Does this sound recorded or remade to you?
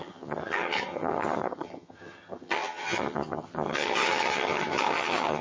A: remade